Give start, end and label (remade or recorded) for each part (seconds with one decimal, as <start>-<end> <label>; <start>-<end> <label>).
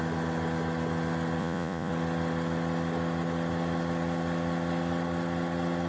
0.0-1.4 recorded; 1.4-1.9 remade; 1.9-5.9 recorded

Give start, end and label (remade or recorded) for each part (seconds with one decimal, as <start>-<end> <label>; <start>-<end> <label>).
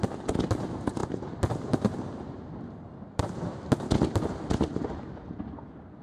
0.0-6.0 recorded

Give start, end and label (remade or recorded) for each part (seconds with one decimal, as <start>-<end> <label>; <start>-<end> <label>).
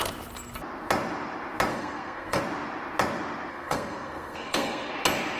0.0-1.7 recorded; 1.7-2.4 remade; 2.4-3.5 recorded; 3.5-4.9 remade; 4.9-5.4 recorded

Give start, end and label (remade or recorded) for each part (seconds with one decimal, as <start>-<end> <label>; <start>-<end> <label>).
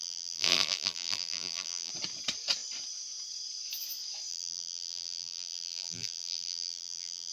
0.0-1.9 remade; 1.9-4.3 recorded; 4.3-7.3 remade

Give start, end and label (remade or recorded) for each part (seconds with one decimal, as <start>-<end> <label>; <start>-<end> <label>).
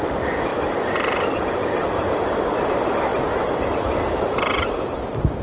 0.0-3.1 recorded; 3.1-3.9 remade; 3.9-5.4 recorded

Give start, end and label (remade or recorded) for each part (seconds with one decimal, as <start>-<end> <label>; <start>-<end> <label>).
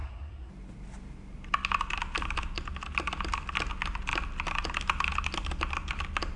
0.0-0.5 remade; 0.5-6.4 recorded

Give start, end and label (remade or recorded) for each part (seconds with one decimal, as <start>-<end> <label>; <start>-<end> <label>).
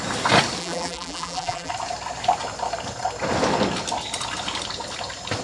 0.0-0.6 recorded; 0.6-1.7 remade; 1.7-5.4 recorded